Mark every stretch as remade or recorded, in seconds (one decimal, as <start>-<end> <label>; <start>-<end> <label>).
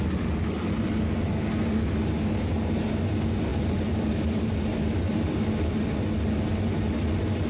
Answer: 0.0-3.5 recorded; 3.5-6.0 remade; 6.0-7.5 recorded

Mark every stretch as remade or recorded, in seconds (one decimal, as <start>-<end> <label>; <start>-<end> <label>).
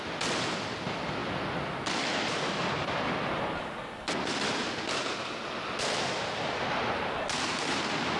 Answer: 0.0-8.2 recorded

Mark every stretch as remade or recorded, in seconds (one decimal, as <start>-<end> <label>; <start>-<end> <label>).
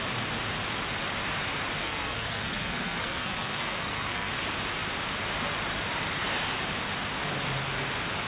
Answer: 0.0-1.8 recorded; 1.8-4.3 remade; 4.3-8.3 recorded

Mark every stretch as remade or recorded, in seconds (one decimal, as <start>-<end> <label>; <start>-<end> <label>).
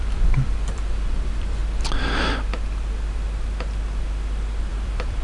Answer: 0.0-1.6 remade; 1.6-4.7 recorded; 4.7-5.2 remade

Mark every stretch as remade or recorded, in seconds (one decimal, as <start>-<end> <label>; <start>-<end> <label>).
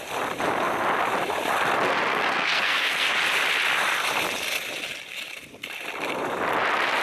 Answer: 0.0-2.1 recorded; 2.1-3.2 remade; 3.2-7.0 recorded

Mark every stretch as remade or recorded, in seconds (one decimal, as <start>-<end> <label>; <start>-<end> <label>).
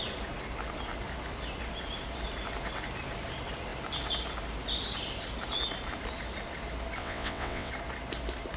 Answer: 0.0-7.0 recorded; 7.0-7.7 remade; 7.7-8.6 recorded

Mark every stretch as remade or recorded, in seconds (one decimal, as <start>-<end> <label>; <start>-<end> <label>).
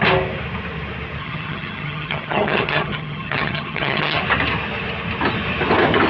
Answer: 0.0-1.2 recorded; 1.2-4.2 remade; 4.2-6.1 recorded